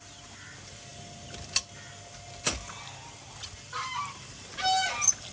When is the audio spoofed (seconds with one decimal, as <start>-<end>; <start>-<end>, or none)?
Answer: none